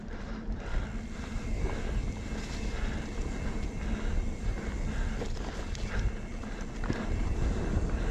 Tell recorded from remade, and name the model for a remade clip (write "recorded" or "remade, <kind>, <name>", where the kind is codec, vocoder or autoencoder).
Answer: recorded